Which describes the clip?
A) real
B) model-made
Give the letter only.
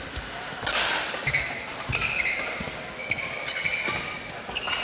A